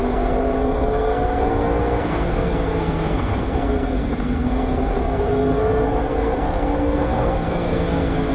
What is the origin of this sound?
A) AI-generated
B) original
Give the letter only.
A